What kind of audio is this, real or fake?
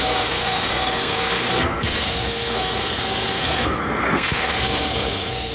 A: fake